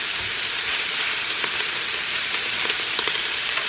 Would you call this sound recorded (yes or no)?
no